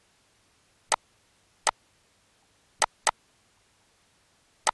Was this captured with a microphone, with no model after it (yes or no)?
yes